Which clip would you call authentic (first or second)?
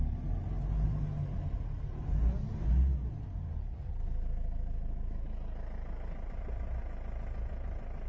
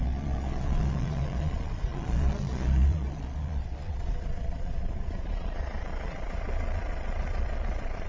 first